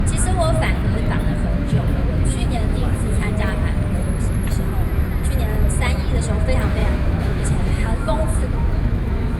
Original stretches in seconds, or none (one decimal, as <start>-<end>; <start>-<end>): 0.0-1.5; 3.3-6.8